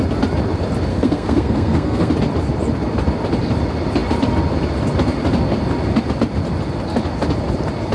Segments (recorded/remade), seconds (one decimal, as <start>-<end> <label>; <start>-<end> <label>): 0.0-0.9 recorded; 0.9-2.1 remade; 2.1-7.9 recorded